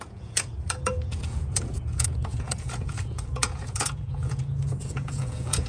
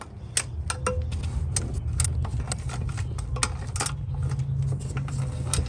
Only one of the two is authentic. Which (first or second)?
second